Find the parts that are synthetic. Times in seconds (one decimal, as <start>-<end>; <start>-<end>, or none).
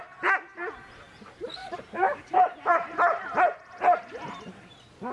1.6-4.6